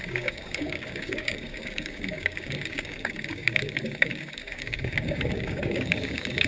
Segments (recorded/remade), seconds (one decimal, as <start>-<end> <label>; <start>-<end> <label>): 0.0-6.5 remade